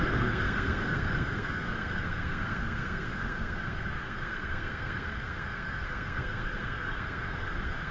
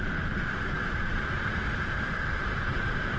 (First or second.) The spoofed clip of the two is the first